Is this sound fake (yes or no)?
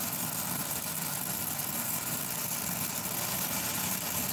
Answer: no